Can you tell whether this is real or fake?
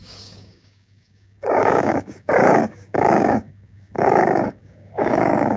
fake